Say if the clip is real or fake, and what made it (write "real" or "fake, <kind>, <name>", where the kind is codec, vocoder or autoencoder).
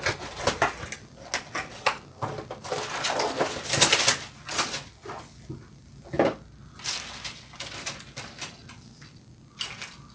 real